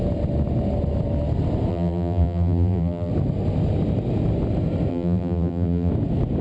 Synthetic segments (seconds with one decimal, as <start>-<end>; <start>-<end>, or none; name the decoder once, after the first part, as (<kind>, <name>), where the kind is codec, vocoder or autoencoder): 1.7-3.1 (vocoder, BigVGAN v2); 4.9-5.9